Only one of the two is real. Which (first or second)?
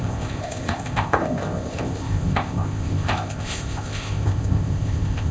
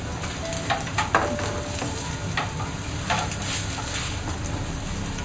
second